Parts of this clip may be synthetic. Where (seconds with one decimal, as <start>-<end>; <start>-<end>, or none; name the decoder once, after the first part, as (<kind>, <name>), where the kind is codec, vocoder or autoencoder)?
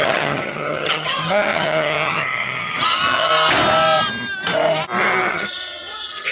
0.0-3.3 (vocoder, HiFi-GAN); 5.3-6.3